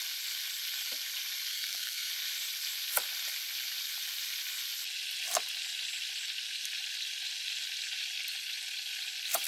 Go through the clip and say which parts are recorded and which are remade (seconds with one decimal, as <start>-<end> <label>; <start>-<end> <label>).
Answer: 0.0-1.5 recorded; 1.5-2.1 remade; 2.1-9.5 recorded